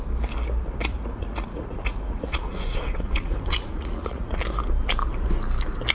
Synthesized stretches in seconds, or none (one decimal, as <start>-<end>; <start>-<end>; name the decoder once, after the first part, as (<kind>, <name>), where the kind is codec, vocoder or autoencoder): 0.9-4.4 (vocoder, Vocos)